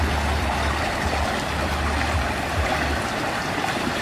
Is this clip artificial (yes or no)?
no